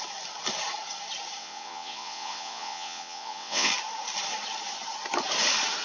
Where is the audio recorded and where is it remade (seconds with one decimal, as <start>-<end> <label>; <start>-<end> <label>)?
0.0-1.4 recorded; 1.4-3.7 remade; 3.7-5.8 recorded